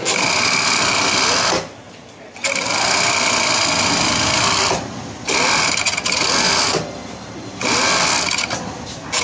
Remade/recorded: recorded